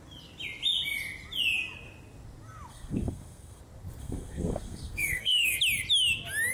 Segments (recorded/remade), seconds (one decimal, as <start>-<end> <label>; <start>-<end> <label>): 0.0-2.7 recorded; 2.7-3.6 remade; 3.6-4.0 recorded; 4.0-5.6 remade; 5.6-6.5 recorded